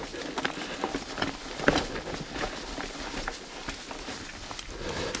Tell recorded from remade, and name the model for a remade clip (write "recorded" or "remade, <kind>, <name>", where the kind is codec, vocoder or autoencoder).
recorded